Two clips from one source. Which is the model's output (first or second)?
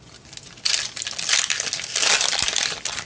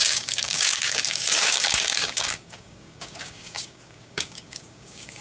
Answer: second